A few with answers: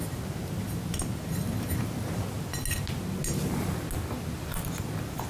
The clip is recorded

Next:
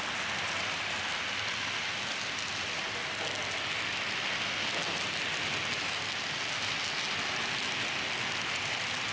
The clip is recorded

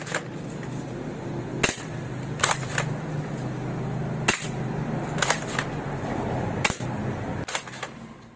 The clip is recorded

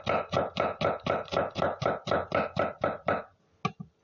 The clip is recorded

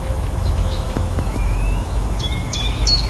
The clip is remade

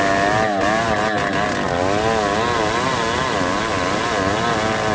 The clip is recorded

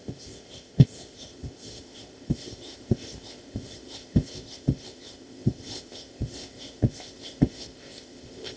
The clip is remade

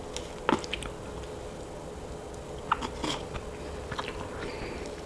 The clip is recorded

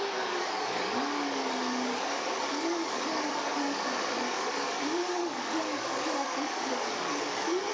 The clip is remade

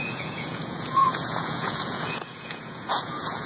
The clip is remade